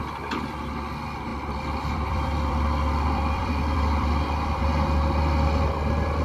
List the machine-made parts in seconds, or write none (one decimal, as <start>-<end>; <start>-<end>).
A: 1.3-4.6